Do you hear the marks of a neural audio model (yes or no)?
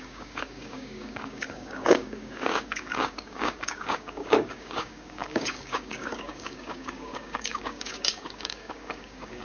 yes